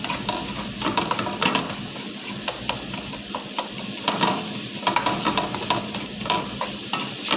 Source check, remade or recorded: recorded